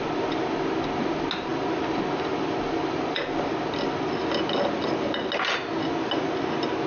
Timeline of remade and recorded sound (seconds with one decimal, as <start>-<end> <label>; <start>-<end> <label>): 0.0-6.9 recorded